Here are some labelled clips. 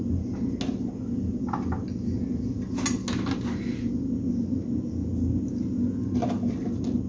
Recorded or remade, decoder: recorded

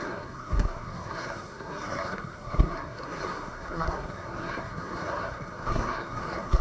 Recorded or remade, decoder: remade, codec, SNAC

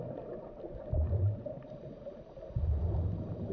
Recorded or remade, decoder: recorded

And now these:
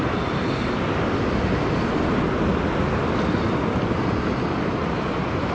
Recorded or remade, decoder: recorded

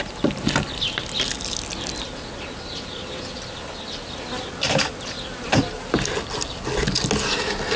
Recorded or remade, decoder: recorded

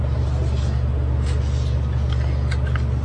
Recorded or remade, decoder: recorded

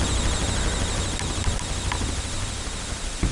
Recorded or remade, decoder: recorded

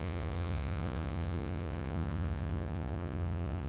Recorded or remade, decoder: remade, vocoder, Vocos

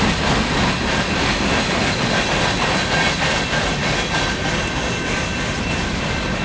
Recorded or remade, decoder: recorded